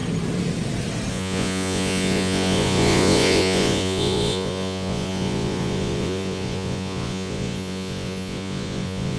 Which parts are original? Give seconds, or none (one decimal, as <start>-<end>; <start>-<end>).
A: 0.0-1.1